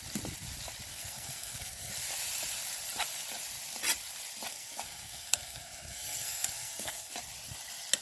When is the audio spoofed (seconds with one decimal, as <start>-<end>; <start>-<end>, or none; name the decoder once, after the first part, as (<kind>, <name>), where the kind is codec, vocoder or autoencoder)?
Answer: 0.9-1.9 (codec, SNAC); 4.5-7.1